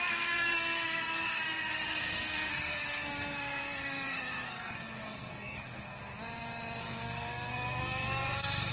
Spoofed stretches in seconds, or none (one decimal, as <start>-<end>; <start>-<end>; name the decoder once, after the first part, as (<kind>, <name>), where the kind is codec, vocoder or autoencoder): 0.0-6.0 (codec, SNAC); 6.8-8.7